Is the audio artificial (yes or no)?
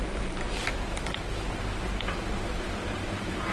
yes